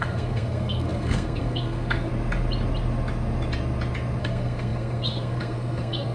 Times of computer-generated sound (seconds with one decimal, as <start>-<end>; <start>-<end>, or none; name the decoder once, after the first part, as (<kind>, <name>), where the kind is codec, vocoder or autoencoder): 0.0-2.1 (codec, SNAC); 4.2-6.1